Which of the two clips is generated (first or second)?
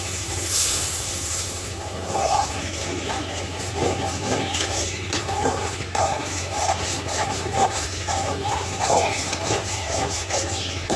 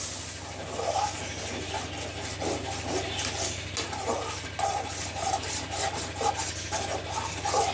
first